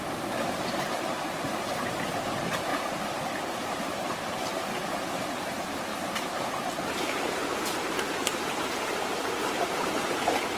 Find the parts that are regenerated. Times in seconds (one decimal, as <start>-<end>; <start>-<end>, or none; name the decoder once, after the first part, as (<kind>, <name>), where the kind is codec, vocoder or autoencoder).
0.0-2.7 (vocoder, BigVGAN v2); 3.8-10.6